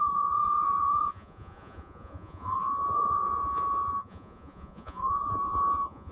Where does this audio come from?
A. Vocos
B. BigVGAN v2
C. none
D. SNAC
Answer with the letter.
A